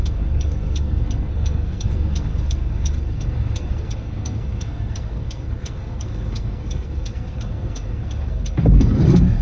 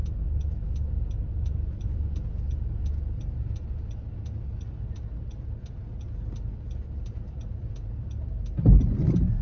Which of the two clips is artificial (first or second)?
first